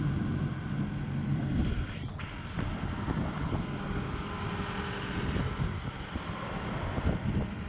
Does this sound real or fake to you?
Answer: real